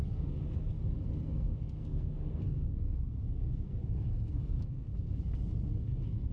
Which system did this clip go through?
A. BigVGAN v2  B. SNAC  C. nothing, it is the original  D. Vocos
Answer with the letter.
B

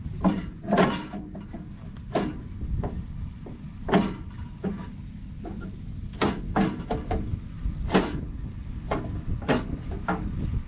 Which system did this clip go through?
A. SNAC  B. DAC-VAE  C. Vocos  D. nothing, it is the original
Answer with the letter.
D